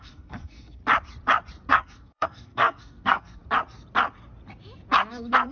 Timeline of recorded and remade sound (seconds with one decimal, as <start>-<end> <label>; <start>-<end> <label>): 0.0-0.8 remade; 0.8-1.7 recorded; 1.7-3.4 remade; 3.4-5.1 recorded; 5.1-5.5 remade